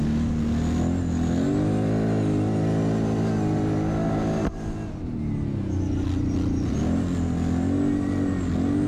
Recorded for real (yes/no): yes